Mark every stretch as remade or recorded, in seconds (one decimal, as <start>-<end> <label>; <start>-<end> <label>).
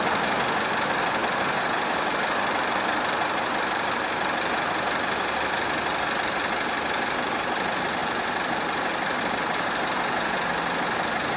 0.0-8.0 recorded; 8.0-9.2 remade; 9.2-11.4 recorded